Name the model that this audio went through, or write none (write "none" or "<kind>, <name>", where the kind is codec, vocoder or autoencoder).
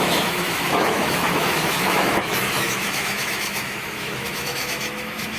autoencoder, DAC-VAE